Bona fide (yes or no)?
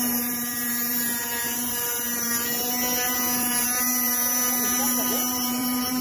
no